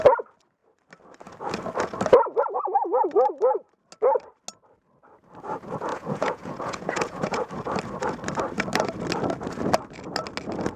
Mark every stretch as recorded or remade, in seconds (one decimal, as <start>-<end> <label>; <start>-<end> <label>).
0.0-5.9 recorded; 5.9-7.5 remade; 7.5-10.8 recorded